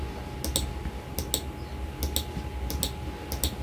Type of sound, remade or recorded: recorded